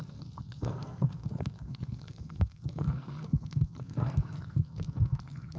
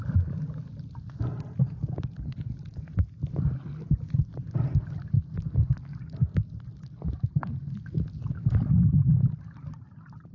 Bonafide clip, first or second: second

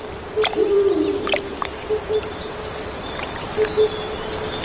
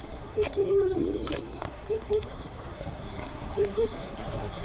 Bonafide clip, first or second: first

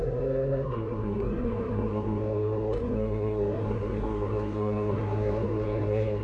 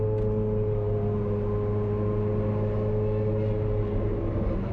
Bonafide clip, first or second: second